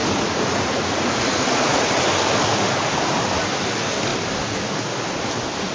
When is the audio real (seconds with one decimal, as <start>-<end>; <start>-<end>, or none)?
1.9-5.7